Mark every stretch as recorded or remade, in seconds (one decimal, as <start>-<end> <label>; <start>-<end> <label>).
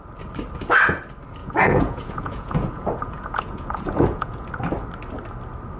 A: 0.0-1.4 recorded; 1.4-4.5 remade; 4.5-5.8 recorded